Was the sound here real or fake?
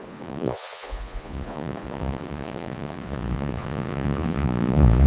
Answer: fake